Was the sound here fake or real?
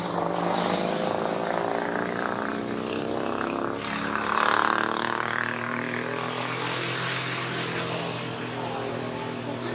real